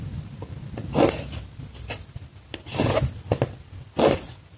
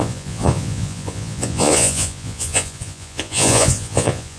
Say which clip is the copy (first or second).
second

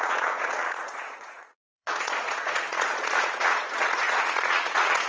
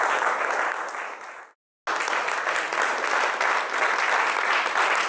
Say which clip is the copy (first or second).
first